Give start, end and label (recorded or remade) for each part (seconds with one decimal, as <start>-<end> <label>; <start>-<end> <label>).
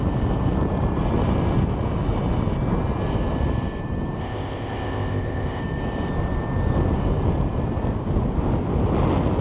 0.0-4.2 recorded; 4.2-5.6 remade; 5.6-9.4 recorded